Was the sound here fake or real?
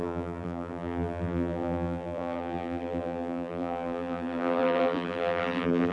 fake